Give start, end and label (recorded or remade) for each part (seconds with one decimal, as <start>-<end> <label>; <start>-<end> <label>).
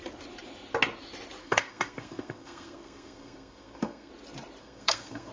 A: 0.0-1.4 recorded; 1.4-4.1 remade; 4.1-4.6 recorded; 4.6-5.3 remade